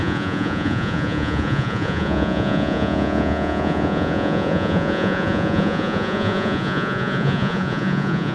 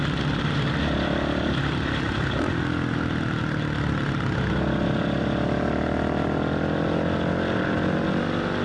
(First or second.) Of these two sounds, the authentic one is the second